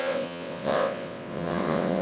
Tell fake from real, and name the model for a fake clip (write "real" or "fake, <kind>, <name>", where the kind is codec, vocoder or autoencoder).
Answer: fake, vocoder, WaveNeXt